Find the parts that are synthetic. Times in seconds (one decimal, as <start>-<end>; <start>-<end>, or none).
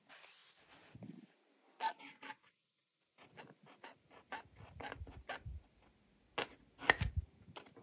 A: none